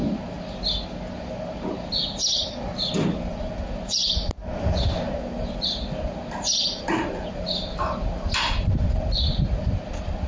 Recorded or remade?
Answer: recorded